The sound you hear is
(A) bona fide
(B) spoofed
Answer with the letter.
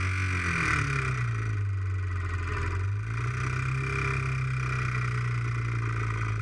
A